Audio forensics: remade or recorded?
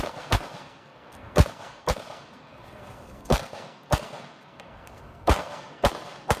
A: remade